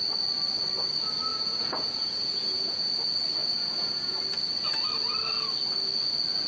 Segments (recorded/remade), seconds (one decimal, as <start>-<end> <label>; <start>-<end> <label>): 0.0-1.3 recorded; 1.3-2.9 remade; 2.9-3.4 recorded; 3.4-4.2 remade; 4.2-6.5 recorded